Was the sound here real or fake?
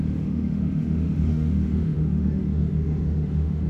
fake